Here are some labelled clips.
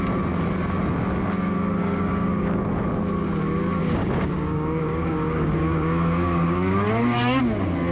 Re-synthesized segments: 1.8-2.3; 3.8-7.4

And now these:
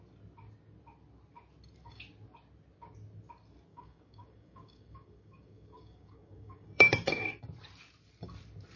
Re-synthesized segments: 3.7-7.4

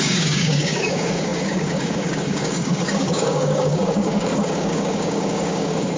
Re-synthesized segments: 0.0-6.0

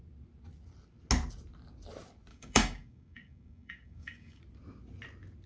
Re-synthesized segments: 2.3-4.4

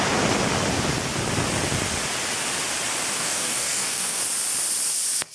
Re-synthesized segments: 3.2-4.2